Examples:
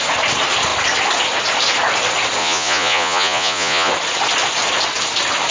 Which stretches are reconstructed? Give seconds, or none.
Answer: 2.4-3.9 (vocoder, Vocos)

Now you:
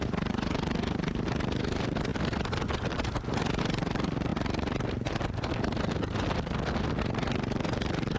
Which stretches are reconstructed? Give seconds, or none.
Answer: none

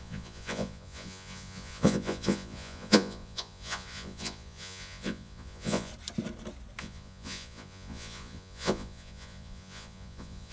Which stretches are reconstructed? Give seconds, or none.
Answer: 0.0-5.9 (vocoder, Vocos); 6.8-10.5